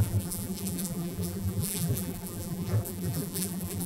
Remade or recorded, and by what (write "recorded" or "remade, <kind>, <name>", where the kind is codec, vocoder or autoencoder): remade, vocoder, BigVGAN v2